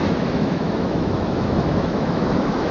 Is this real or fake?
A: fake